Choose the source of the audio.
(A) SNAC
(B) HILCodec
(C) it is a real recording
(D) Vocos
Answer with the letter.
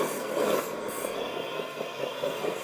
A